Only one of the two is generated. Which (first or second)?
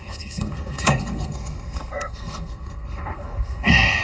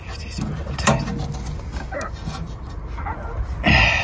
first